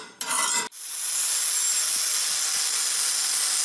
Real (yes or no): yes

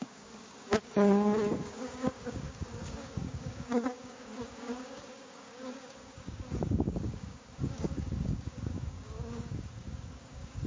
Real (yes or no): no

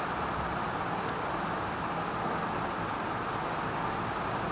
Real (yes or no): yes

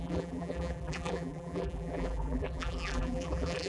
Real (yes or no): no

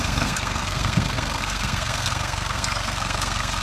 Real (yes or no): no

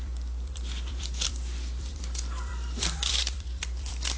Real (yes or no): no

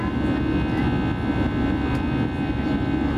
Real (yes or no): yes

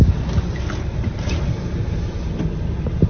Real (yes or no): no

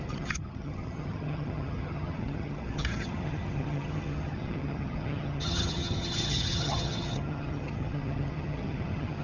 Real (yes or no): no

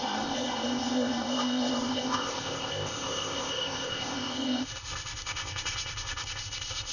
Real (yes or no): no